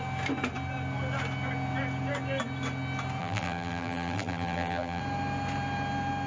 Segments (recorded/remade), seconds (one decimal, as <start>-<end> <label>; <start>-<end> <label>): 0.0-3.2 recorded; 3.2-5.0 remade; 5.0-6.3 recorded